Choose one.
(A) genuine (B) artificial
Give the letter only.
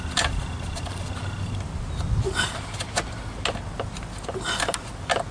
A